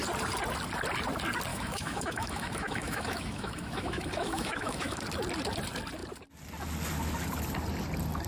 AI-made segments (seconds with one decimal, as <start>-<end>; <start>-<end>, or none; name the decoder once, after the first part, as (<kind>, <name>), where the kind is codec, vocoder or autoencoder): 1.5-5.0 (autoencoder, DAC-VAE)